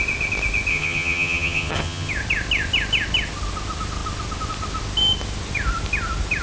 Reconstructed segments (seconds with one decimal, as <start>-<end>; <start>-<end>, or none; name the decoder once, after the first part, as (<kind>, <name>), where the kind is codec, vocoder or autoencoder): 0.7-2.1 (vocoder, HiFi-GAN)